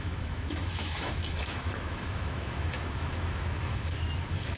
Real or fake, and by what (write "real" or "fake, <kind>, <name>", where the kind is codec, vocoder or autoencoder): fake, autoencoder, DAC-VAE